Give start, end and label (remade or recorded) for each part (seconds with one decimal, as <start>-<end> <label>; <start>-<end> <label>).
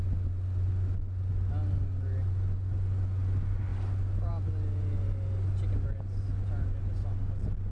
0.0-7.7 recorded